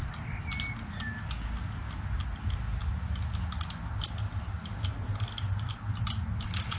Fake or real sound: real